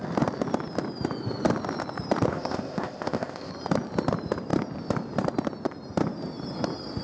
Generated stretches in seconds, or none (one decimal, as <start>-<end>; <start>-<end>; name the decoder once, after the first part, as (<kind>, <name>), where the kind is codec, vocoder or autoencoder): 2.3-3.5 (codec, ZipCodec)